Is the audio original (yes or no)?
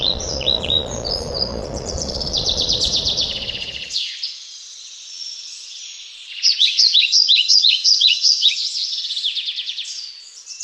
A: no